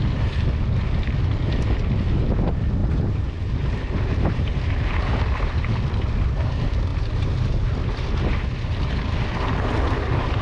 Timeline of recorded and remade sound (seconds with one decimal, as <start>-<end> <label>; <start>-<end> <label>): 0.0-2.8 recorded; 2.8-4.5 remade; 4.5-10.4 recorded